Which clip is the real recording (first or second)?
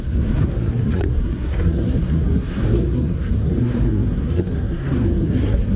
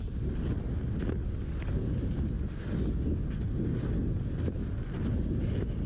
second